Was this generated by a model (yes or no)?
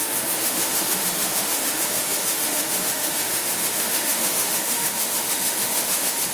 yes